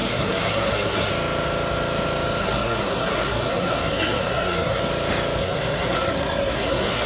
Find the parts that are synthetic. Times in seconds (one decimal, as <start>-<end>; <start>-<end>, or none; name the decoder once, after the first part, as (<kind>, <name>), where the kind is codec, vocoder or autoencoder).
0.0-1.1 (codec, SNAC); 2.4-4.8; 5.4-7.1